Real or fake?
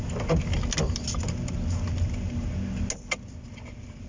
real